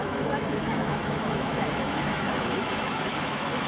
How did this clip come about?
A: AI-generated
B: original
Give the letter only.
A